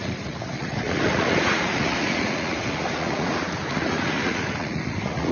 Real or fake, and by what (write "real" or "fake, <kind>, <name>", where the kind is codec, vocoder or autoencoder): fake, vocoder, Vocos